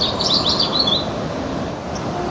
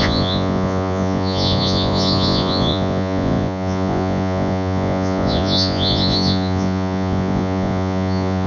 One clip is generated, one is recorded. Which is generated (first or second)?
second